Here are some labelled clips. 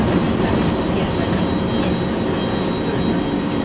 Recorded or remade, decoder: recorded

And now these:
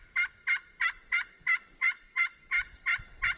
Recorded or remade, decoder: recorded